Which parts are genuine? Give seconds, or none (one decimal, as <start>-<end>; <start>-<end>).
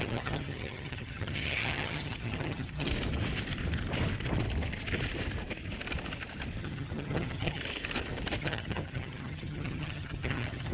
2.9-6.6; 7.6-8.4